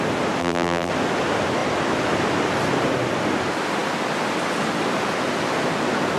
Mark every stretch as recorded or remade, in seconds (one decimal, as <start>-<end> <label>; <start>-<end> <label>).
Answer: 0.0-0.4 recorded; 0.4-0.9 remade; 0.9-6.2 recorded